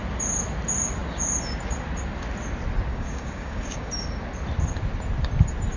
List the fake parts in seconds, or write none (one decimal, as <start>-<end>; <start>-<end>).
2.9-3.9